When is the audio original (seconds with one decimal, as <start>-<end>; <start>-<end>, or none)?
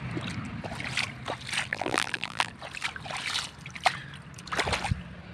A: 0.0-1.7; 2.5-5.3